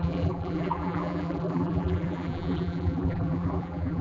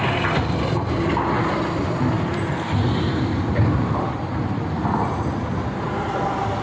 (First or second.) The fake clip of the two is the first